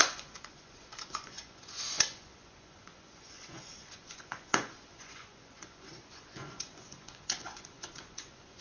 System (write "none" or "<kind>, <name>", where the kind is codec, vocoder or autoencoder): vocoder, Vocos